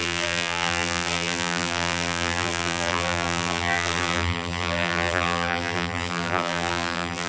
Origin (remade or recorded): remade